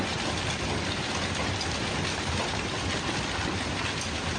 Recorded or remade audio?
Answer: recorded